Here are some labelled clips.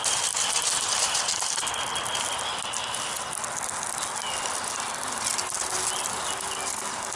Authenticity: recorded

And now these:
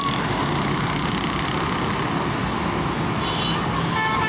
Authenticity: recorded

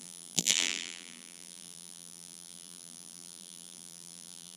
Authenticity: remade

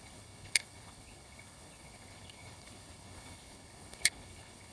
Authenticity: remade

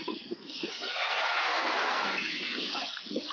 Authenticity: remade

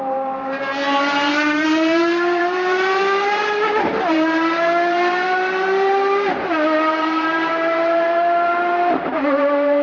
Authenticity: remade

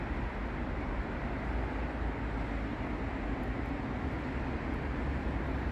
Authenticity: recorded